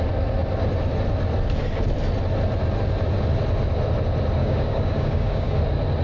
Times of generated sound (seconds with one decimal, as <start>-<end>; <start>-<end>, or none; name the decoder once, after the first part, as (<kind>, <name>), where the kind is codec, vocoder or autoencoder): 4.4-5.6 (codec, DAC)